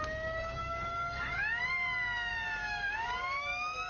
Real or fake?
fake